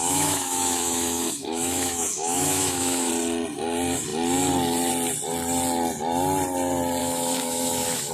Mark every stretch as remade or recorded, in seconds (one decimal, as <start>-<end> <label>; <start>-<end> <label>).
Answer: 0.0-3.1 remade; 3.1-7.0 recorded; 7.0-8.1 remade